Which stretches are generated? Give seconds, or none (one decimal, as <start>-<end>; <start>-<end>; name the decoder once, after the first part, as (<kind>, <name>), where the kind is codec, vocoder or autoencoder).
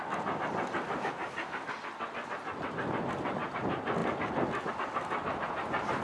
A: none